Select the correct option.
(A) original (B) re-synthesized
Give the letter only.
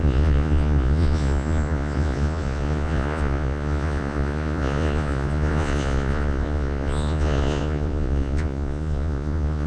B